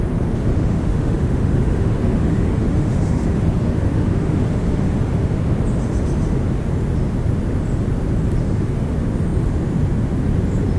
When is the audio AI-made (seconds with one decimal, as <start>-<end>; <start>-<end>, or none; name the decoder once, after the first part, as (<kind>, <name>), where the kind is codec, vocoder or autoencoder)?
0.5-5.4 (autoencoder, DAC-VAE); 8.4-8.9